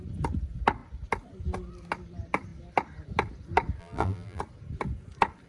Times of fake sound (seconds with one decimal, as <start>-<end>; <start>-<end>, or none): 3.8-4.4